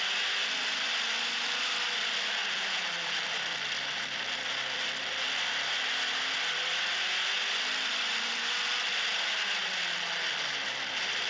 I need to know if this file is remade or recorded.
recorded